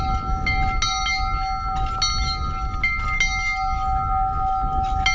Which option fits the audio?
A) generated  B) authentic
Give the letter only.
B